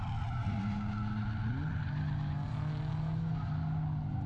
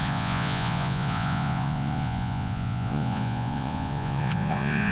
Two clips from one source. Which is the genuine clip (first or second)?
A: first